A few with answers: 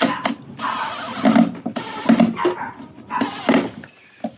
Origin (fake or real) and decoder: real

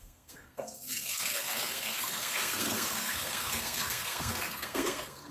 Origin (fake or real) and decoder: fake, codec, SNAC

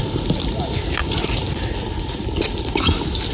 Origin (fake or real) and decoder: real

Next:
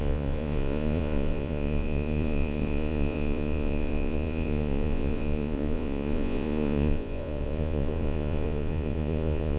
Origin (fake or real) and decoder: fake, vocoder, Vocos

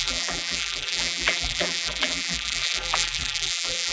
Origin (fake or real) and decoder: fake, vocoder, BigVGAN v2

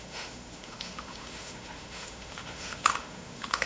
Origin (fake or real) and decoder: fake, autoencoder, DAC-VAE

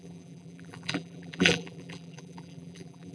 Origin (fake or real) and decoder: fake, vocoder, BigVGAN v2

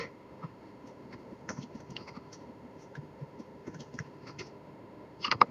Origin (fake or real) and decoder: fake, autoencoder, DAC-VAE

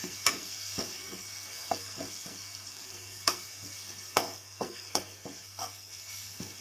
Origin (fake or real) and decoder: fake, codec, SNAC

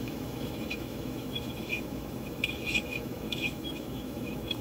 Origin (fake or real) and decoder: fake, autoencoder, DAC-VAE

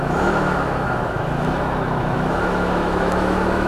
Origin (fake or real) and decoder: fake, autoencoder, DAC-VAE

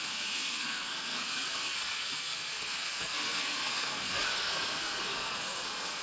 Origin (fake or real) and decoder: fake, codec, SNAC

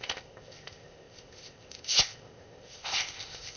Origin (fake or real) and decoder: fake, codec, ZipCodec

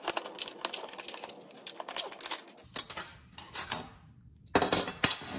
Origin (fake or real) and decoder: real